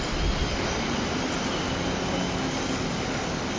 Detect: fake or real real